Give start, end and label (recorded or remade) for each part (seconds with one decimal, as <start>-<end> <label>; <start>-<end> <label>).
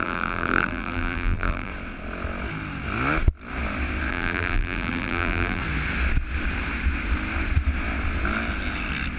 0.0-1.7 remade; 1.7-4.1 recorded; 4.1-5.6 remade; 5.6-9.2 recorded